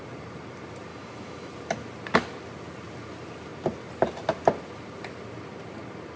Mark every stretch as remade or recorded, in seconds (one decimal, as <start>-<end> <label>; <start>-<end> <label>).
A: 0.0-0.9 recorded; 0.9-1.5 remade; 1.5-6.2 recorded